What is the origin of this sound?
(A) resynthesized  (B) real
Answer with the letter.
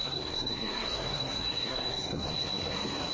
A